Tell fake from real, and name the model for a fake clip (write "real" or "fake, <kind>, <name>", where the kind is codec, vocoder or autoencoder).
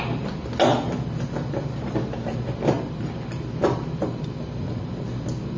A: real